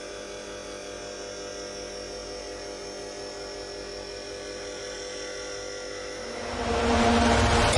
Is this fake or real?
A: real